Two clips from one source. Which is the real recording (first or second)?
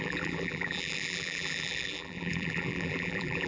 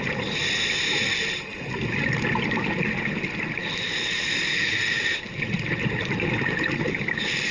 second